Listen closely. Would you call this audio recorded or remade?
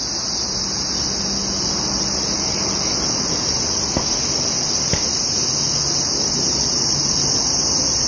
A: recorded